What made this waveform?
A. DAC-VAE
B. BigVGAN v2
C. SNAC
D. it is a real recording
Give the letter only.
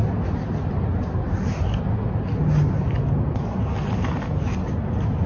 D